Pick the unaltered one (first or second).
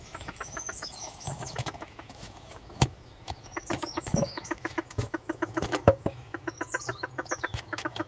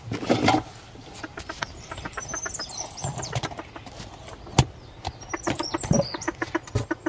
second